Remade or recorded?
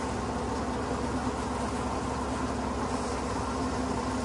recorded